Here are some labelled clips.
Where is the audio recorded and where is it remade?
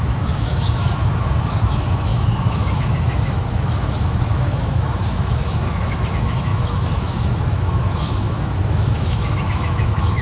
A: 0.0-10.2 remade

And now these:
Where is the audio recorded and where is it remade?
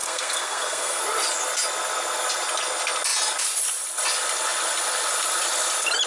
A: 0.0-1.0 remade; 1.0-6.1 recorded